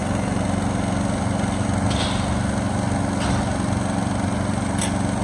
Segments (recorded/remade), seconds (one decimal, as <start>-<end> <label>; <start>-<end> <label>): 0.0-5.2 recorded